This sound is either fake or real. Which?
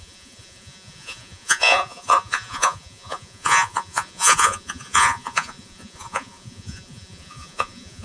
fake